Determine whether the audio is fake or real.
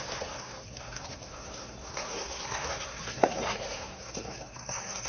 fake